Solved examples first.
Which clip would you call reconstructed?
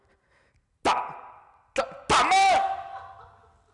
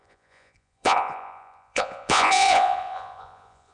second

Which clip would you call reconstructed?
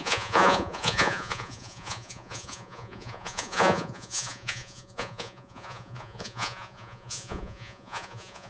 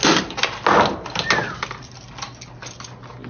first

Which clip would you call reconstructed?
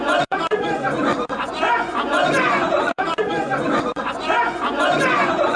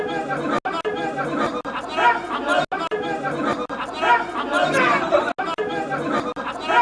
first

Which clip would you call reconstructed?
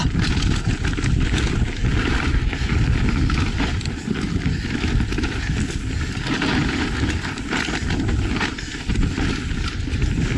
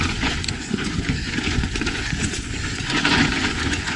second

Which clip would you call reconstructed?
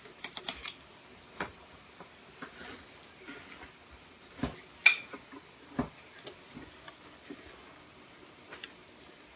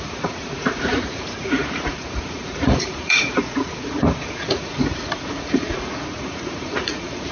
second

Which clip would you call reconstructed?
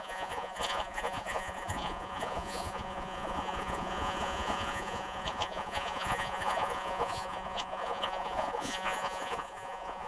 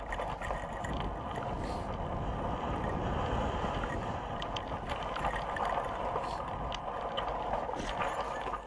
first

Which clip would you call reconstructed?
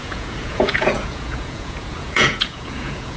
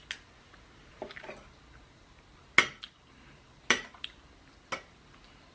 first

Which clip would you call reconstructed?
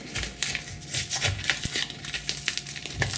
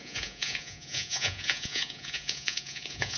second